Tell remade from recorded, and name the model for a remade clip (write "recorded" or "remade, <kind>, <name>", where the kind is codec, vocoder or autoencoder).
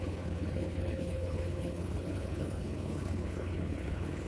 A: remade, codec, HILCodec